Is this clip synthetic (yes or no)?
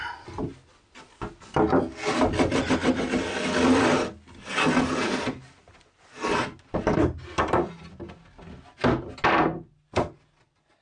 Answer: no